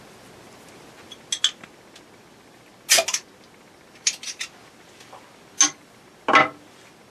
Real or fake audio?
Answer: real